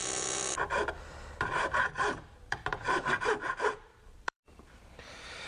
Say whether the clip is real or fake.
fake